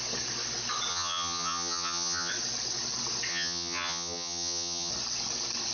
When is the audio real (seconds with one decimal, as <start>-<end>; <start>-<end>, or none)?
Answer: 0.0-0.9; 2.3-3.3; 4.9-5.7